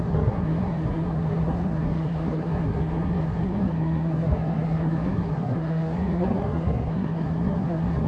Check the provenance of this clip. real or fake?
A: fake